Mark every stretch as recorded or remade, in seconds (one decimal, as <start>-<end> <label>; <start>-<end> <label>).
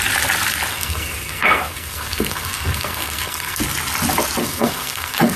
0.0-0.7 recorded; 0.7-3.6 remade; 3.6-4.4 recorded; 4.4-5.4 remade